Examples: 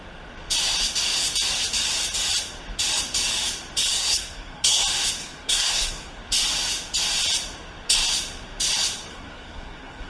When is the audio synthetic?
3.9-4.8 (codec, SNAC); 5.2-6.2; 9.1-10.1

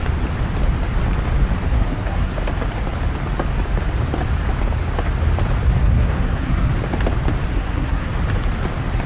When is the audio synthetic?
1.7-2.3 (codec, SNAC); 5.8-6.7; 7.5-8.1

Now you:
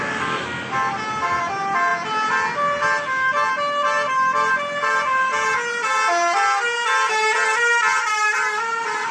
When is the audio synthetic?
none

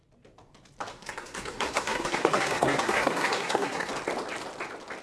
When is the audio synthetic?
0.9-3.9 (codec, SNAC)

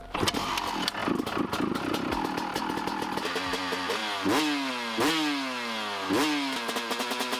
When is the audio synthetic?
none

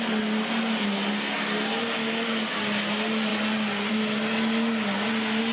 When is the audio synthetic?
none